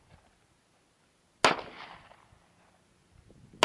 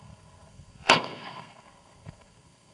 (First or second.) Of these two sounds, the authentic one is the first